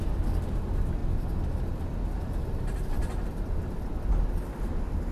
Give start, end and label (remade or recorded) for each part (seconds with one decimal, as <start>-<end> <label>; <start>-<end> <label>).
0.0-5.1 recorded